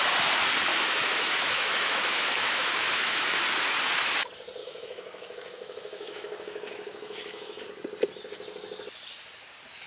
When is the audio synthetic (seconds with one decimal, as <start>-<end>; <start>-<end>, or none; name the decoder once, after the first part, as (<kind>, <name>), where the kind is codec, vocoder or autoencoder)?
0.7-3.4 (autoencoder, DAC-VAE); 4.6-7.6